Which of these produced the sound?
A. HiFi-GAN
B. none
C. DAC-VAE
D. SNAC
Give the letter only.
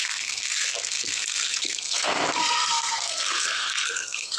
D